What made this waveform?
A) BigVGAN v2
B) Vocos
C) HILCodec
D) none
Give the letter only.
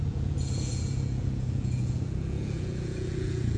B